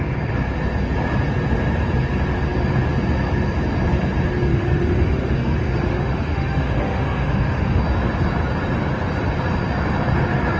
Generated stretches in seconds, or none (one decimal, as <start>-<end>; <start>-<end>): 4.5-7.8